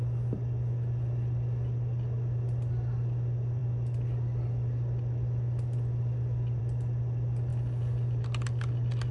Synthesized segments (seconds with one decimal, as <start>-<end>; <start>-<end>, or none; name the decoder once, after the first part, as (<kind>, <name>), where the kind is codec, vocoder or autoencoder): none